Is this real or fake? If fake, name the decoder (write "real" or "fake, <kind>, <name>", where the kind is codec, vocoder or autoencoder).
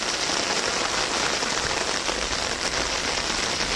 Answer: real